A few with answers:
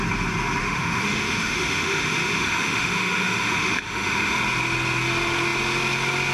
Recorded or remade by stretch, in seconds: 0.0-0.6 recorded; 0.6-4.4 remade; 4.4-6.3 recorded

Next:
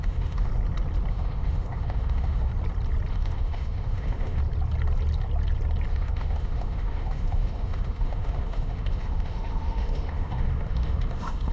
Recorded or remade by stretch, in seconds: 0.0-0.5 remade; 0.5-1.1 recorded; 1.1-2.5 remade; 2.5-3.1 recorded; 3.1-4.4 remade; 4.4-5.9 recorded; 5.9-11.5 remade

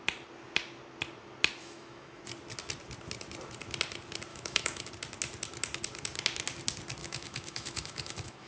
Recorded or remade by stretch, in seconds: 0.0-1.6 recorded; 1.6-2.2 remade; 2.2-4.3 recorded; 4.3-4.9 remade; 4.9-7.0 recorded; 7.0-8.5 remade

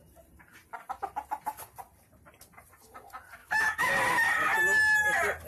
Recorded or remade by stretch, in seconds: 0.0-3.4 recorded; 3.4-3.9 remade; 3.9-5.5 recorded